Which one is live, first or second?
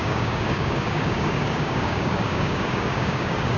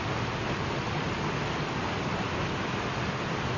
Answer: second